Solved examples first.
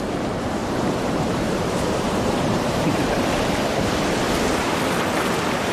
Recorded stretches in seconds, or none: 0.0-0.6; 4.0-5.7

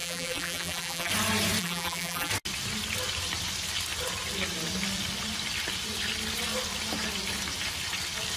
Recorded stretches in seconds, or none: 1.1-1.6; 2.3-8.4

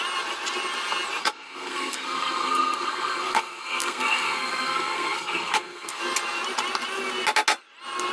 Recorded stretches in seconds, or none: 0.0-1.2; 6.0-8.1

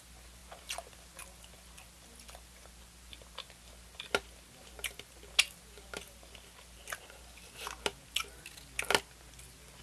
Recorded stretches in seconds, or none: 0.0-9.8

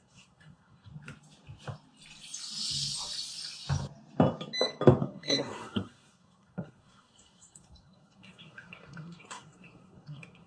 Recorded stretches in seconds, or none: 0.9-5.0

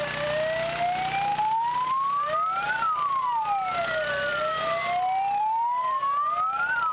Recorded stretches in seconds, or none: 0.0-6.9

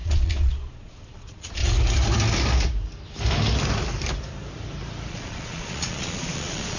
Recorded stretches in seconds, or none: 1.6-5.1

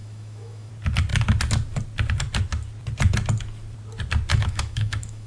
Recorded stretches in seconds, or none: 0.7-4.3